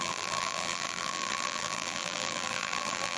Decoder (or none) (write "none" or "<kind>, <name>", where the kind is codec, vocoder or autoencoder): vocoder, BigVGAN v2